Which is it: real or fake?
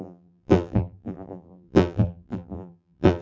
fake